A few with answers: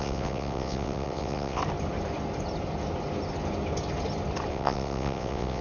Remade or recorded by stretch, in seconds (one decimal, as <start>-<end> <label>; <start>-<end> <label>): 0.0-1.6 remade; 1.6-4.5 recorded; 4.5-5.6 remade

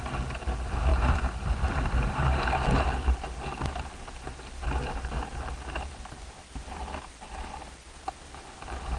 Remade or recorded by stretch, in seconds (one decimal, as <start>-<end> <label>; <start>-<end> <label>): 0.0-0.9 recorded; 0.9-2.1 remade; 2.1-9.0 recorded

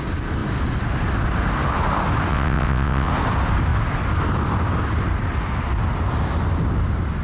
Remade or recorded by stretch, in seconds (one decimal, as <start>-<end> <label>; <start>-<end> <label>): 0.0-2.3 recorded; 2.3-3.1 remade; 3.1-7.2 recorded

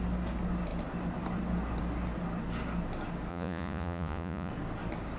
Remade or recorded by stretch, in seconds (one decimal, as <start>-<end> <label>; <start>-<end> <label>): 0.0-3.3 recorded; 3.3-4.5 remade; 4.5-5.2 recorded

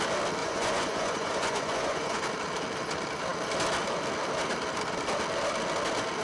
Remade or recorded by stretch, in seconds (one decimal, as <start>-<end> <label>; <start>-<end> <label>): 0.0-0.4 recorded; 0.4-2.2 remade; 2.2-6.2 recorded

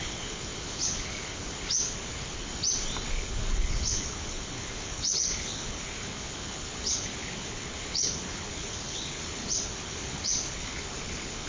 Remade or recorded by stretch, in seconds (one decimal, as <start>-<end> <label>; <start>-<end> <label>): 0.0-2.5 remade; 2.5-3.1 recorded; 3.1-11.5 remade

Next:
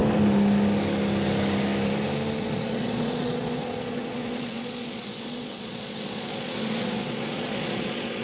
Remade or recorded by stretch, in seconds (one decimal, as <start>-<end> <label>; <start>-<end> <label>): 0.0-2.4 recorded; 2.4-8.2 remade

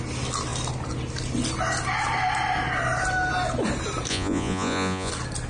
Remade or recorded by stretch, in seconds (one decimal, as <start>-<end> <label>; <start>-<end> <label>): 0.0-4.1 recorded; 4.1-5.1 remade; 5.1-5.5 recorded